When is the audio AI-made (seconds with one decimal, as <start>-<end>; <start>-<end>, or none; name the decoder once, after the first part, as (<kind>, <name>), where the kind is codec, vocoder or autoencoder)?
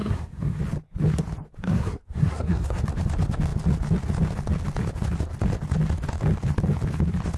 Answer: 0.0-0.6 (codec, SNAC); 1.6-2.8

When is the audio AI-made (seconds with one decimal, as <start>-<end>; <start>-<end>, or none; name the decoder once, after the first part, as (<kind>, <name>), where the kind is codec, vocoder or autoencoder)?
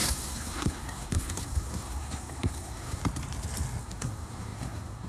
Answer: 0.0-3.0 (codec, SNAC); 3.8-5.1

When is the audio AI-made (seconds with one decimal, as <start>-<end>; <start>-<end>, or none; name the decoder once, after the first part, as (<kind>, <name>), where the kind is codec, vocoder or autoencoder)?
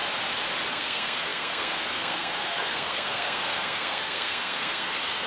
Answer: 0.7-5.3 (codec, SNAC)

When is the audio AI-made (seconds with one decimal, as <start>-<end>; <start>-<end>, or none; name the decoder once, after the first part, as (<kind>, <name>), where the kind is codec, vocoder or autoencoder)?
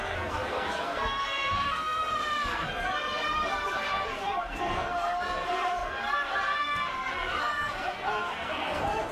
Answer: 0.0-9.1 (codec, SNAC)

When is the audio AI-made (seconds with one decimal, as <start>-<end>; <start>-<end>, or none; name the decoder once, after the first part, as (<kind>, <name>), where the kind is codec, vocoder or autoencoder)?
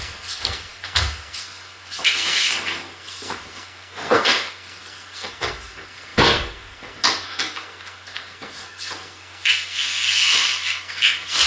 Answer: 0.0-11.5 (codec, SNAC)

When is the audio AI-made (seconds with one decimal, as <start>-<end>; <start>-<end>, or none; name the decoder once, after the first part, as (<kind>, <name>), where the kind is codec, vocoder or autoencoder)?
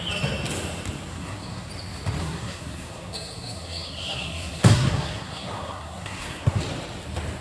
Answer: 1.1-1.7 (codec, SNAC); 2.2-6.6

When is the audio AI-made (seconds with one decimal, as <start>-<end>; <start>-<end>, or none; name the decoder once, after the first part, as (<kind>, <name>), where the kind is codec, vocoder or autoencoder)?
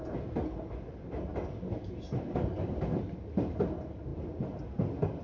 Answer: none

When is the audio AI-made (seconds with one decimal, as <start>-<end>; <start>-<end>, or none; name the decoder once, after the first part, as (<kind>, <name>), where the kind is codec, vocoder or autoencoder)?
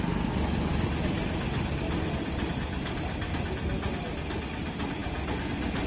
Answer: none